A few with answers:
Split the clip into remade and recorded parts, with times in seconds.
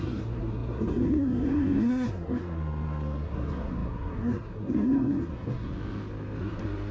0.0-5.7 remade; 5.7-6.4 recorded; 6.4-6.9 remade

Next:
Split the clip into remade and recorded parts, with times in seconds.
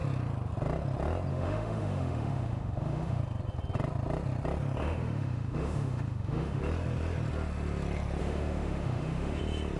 0.0-1.3 recorded; 1.3-3.2 remade; 3.2-4.8 recorded; 4.8-6.6 remade; 6.6-8.2 recorded; 8.2-9.4 remade; 9.4-9.8 recorded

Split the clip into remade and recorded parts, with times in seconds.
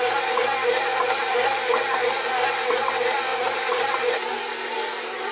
0.0-5.3 recorded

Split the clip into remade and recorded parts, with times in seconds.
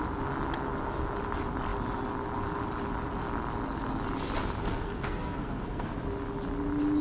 0.0-4.7 recorded; 4.7-5.9 remade; 5.9-7.0 recorded